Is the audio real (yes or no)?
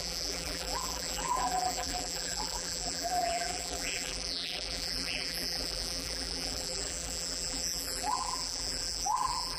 no